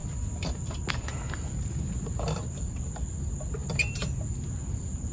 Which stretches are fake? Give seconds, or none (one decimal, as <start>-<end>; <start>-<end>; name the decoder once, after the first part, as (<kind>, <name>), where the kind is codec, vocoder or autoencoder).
none